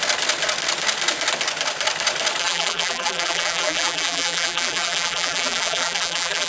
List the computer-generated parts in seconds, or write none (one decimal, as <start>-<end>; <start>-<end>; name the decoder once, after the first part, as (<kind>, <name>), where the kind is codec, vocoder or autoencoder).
2.4-6.5 (vocoder, BigVGAN v2)